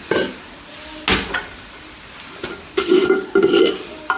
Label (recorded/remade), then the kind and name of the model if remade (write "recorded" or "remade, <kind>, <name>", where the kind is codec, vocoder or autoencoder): recorded